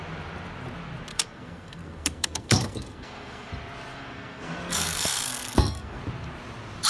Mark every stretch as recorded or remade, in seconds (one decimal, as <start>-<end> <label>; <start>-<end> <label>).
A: 0.0-1.1 recorded; 1.1-3.5 remade; 3.5-3.9 recorded; 3.9-6.0 remade; 6.0-6.9 recorded